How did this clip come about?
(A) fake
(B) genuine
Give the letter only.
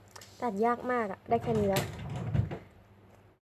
B